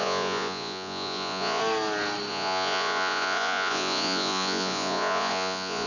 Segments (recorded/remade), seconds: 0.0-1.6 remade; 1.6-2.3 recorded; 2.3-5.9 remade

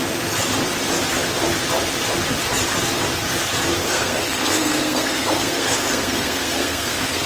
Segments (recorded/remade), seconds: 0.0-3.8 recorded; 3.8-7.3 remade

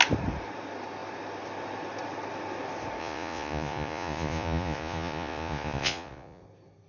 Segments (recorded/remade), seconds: 0.0-3.0 recorded; 3.0-6.4 remade; 6.4-6.9 recorded

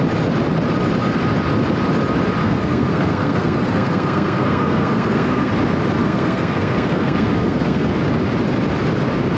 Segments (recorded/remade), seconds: 0.0-2.4 recorded; 2.4-5.5 remade; 5.5-6.0 recorded; 6.0-8.0 remade; 8.0-9.4 recorded

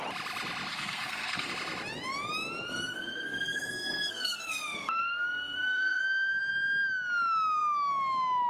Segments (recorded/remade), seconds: 0.0-0.7 recorded; 0.7-1.5 remade; 1.5-2.7 recorded; 2.7-6.0 remade; 6.0-8.5 recorded